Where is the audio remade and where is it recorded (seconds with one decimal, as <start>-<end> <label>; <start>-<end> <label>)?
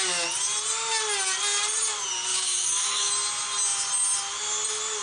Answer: 0.0-2.3 recorded; 2.3-3.1 remade; 3.1-5.0 recorded